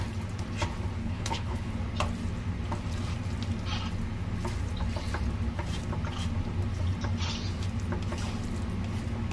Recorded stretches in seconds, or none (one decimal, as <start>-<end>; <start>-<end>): 0.0-1.0; 1.7-9.3